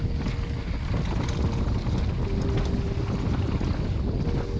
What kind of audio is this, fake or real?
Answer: real